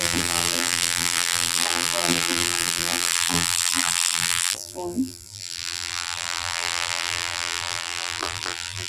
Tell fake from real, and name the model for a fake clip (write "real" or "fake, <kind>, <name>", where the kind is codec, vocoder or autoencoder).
fake, vocoder, BigVGAN v2